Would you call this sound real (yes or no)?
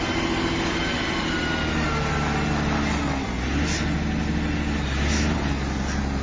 yes